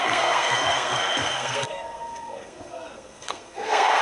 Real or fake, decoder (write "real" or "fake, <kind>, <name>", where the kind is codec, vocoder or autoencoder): fake, codec, SNAC